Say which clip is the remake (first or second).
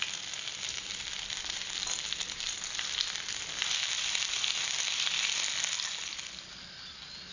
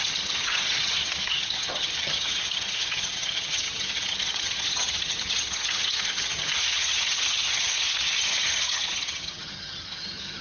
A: second